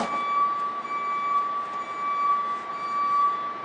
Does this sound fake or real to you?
real